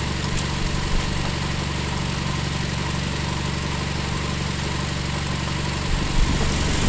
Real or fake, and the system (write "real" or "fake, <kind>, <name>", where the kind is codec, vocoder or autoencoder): real